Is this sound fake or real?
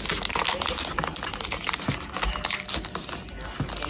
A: real